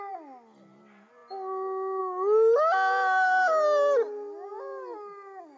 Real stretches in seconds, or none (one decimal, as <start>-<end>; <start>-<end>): 0.0-5.6